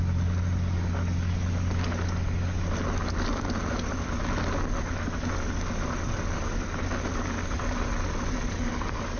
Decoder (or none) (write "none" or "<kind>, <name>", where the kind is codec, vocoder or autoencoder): none